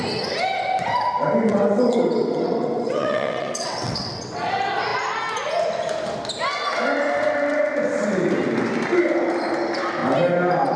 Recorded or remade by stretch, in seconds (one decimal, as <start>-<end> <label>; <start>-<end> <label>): 0.0-1.5 recorded; 1.5-4.5 remade; 4.5-10.8 recorded